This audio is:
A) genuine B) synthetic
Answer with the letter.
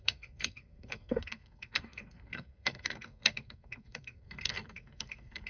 B